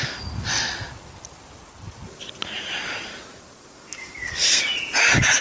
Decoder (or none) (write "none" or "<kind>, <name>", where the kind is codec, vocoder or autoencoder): none